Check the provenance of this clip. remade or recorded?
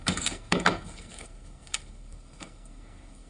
remade